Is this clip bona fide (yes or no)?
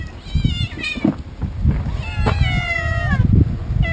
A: yes